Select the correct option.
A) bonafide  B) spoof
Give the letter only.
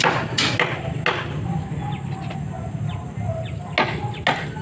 A